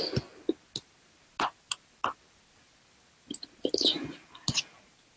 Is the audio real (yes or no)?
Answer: yes